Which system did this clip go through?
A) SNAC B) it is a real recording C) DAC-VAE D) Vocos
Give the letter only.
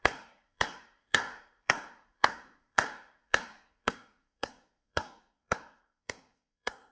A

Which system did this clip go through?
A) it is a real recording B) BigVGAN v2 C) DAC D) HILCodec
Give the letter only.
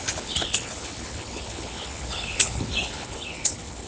D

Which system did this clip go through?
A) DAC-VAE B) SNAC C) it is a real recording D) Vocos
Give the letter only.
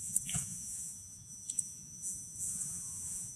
D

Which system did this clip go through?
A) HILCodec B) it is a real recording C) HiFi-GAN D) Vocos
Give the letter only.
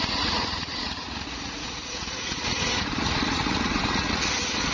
D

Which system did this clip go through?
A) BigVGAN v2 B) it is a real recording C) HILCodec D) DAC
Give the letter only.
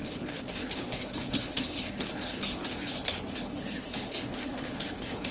C